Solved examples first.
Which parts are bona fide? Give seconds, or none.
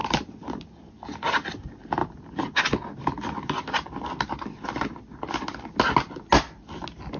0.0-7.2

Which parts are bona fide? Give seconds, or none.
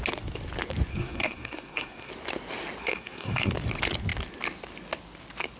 0.0-0.9; 2.1-2.8; 3.5-5.6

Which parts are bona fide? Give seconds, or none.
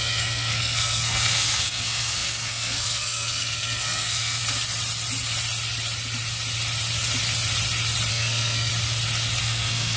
4.4-8.1; 8.7-9.4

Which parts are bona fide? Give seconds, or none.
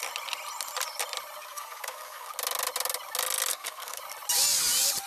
0.0-1.4; 2.3-3.5; 4.0-5.1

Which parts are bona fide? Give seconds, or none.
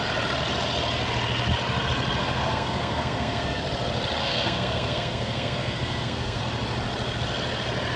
0.0-2.2; 3.6-4.2; 6.4-8.0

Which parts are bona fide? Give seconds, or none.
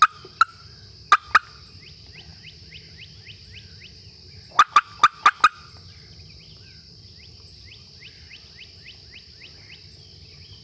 0.0-10.6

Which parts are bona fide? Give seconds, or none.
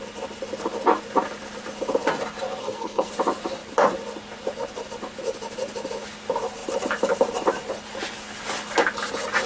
0.0-2.6; 3.1-9.5